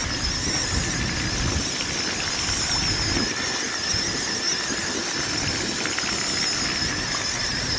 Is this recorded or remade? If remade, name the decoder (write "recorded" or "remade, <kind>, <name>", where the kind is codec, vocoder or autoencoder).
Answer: recorded